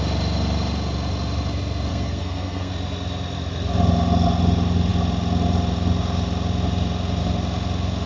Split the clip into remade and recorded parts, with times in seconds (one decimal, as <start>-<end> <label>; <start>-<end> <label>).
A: 0.0-1.9 recorded; 1.9-2.7 remade; 2.7-8.1 recorded